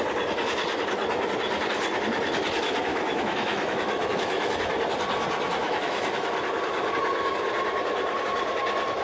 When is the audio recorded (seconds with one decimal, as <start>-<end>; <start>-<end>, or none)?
0.0-2.9; 4.7-5.6; 6.3-9.0